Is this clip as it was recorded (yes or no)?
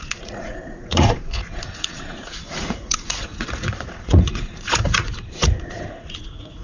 no